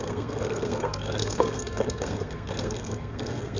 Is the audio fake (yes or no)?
yes